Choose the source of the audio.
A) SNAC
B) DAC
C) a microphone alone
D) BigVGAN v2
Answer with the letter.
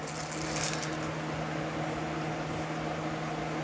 C